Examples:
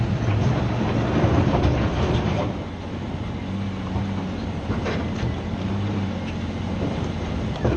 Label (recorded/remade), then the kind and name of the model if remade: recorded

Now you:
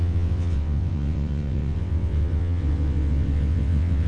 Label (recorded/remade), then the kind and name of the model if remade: remade, vocoder, WaveNeXt